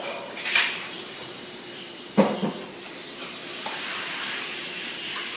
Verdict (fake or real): fake